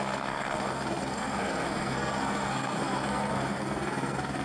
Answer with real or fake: fake